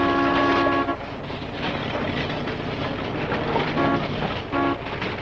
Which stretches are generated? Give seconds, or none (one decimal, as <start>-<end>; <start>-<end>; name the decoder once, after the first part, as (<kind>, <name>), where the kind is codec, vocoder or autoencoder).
none